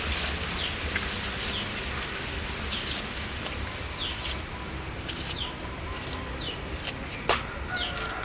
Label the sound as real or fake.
real